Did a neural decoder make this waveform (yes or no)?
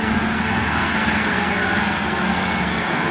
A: yes